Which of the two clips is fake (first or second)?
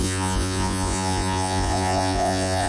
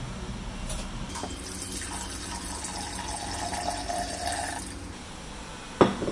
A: first